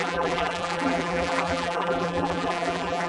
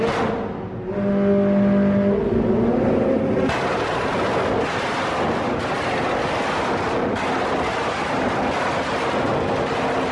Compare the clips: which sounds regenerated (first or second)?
first